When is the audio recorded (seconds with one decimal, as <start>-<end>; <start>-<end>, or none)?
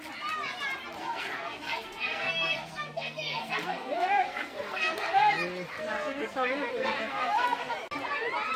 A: 0.0-1.0; 5.3-5.7; 7.7-8.6